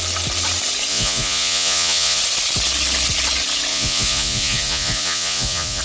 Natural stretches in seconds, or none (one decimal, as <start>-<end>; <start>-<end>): 0.0-0.9; 2.2-3.7